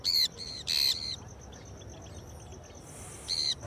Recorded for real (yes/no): yes